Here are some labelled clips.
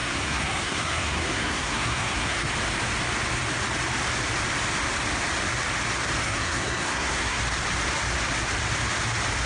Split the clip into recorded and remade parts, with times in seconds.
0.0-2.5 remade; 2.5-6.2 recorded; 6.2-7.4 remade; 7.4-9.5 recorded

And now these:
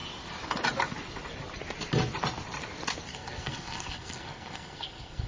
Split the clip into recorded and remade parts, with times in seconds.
0.0-3.1 recorded; 3.1-5.3 remade